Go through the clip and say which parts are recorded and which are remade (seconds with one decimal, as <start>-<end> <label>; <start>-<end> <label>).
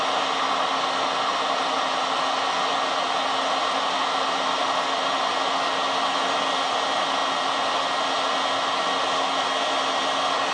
0.0-10.5 recorded